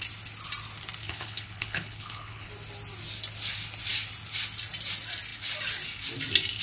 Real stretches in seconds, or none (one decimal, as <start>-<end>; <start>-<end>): 0.0-1.0; 2.5-6.6